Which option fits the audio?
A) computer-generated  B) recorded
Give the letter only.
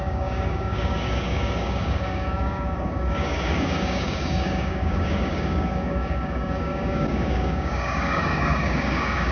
A